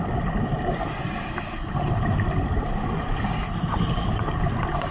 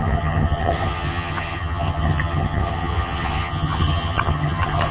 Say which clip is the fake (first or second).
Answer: second